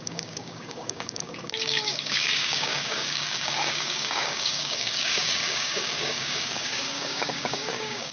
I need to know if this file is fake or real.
fake